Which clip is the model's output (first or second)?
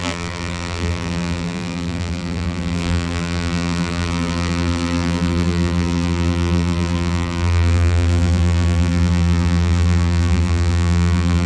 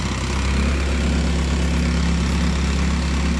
first